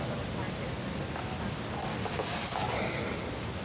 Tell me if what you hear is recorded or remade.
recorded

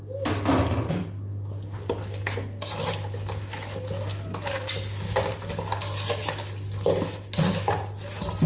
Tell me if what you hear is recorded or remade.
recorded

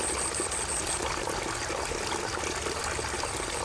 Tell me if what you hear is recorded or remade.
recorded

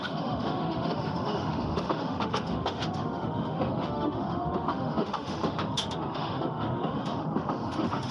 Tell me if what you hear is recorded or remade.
remade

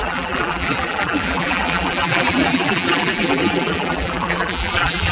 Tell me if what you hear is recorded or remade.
remade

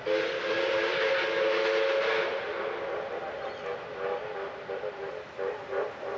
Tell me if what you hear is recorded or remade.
recorded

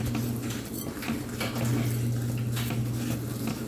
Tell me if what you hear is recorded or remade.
recorded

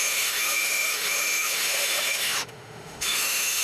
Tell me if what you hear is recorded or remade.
remade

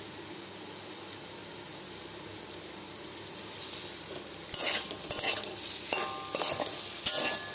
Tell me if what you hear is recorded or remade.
recorded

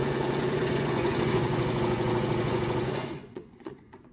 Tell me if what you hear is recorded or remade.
remade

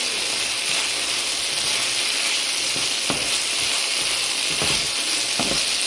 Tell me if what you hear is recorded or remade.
recorded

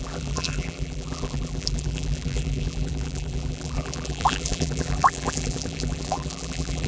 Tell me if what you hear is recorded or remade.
remade